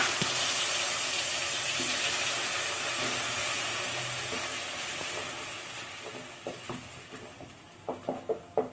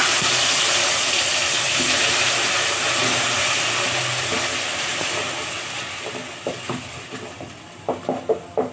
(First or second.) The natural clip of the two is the first